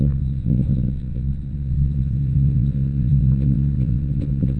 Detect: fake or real fake